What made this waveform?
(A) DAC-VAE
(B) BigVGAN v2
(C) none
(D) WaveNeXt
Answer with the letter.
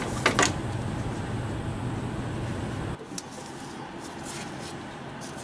C